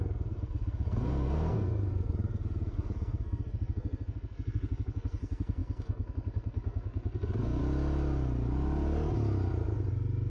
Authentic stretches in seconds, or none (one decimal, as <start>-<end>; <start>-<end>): 7.6-10.3